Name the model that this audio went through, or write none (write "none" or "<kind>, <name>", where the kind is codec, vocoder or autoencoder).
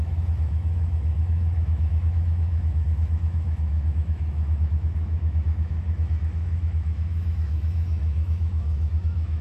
autoencoder, DAC-VAE